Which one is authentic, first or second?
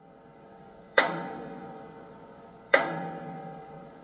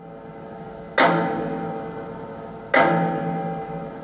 second